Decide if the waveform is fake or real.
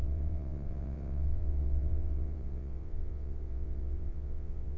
fake